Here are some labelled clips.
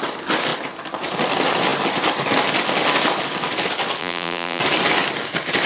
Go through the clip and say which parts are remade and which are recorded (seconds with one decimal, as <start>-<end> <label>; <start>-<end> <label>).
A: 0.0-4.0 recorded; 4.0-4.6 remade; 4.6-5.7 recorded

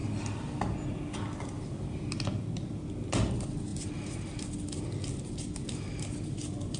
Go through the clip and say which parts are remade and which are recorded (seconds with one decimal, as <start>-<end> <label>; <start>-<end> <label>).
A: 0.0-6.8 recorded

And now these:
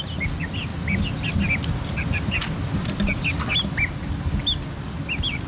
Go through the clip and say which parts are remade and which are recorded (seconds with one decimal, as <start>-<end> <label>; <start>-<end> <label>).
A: 0.0-5.5 recorded

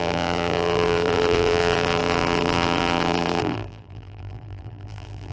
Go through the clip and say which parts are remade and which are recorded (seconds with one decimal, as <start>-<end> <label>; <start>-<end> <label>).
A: 0.0-5.3 remade

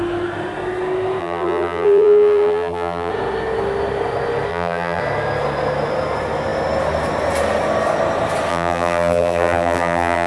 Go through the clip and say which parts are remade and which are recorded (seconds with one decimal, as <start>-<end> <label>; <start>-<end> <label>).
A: 0.0-1.2 recorded; 1.2-3.1 remade; 3.1-4.5 recorded; 4.5-5.0 remade; 5.0-8.5 recorded; 8.5-10.3 remade

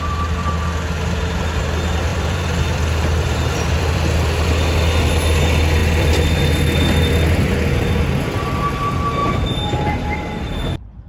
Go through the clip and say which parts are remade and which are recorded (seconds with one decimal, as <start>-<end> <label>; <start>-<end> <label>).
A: 0.0-2.1 recorded; 2.1-4.0 remade; 4.0-5.8 recorded; 5.8-6.4 remade; 6.4-9.2 recorded; 9.2-10.4 remade; 10.4-11.1 recorded

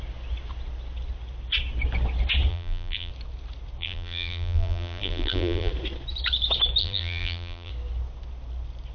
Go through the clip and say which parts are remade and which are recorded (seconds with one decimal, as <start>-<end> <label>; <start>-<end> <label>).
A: 0.0-2.5 recorded; 2.5-3.1 remade; 3.1-3.8 recorded; 3.8-5.7 remade; 5.7-6.8 recorded; 6.8-7.7 remade; 7.7-8.9 recorded